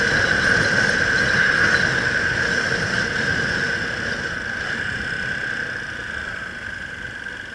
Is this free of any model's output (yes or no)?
yes